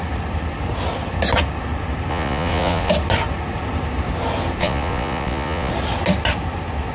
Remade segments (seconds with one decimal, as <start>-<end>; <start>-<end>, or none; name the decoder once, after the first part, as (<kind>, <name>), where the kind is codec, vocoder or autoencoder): 2.1-2.9 (vocoder, Vocos); 4.6-5.7

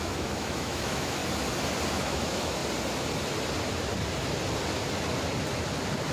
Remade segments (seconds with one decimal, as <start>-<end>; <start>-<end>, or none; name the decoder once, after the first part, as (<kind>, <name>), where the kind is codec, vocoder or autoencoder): 0.0-1.2 (autoencoder, DAC-VAE); 1.9-2.6

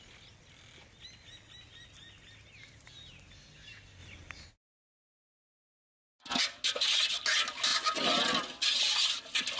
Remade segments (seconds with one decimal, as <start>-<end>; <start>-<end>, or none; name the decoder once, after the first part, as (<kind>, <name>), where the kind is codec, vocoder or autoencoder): none

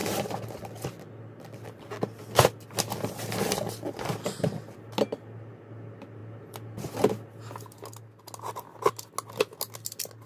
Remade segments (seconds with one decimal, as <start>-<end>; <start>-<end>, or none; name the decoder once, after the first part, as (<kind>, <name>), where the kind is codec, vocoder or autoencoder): none